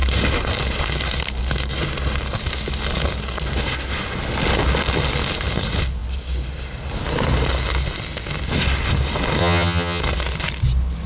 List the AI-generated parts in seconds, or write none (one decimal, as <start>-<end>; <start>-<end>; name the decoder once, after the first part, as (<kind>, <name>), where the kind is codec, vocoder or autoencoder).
9.4-10.0 (vocoder, HiFi-GAN)